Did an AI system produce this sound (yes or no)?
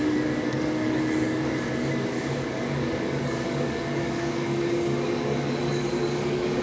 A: yes